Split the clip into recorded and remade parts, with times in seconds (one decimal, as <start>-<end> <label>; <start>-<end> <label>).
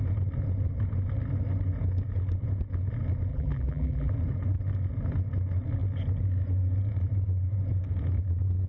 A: 0.0-3.3 recorded; 3.3-4.1 remade; 4.1-8.7 recorded